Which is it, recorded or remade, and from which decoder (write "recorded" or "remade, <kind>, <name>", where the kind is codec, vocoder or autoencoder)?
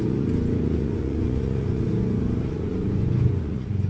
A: remade, vocoder, Vocos